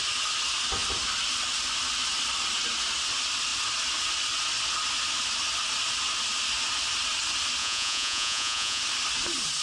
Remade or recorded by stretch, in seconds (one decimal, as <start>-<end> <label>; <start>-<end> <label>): 0.0-7.6 recorded; 7.6-8.8 remade; 8.8-9.6 recorded